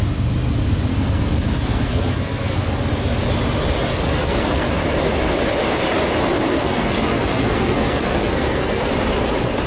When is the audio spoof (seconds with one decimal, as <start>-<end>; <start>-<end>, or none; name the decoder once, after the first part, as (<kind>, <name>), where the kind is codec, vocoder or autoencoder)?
0.9-2.6 (codec, SNAC); 3.9-4.7; 6.5-8.9